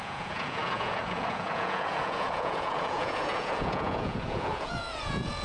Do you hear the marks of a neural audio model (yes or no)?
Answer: yes